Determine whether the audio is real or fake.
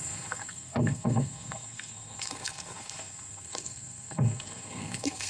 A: fake